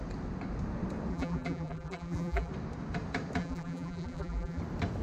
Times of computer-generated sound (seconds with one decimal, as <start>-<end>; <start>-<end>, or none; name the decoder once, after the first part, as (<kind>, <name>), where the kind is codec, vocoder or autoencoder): 1.1-2.5 (vocoder, BigVGAN v2); 3.4-4.6